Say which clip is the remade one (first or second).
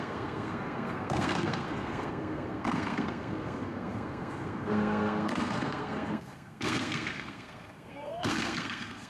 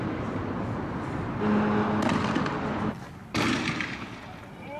first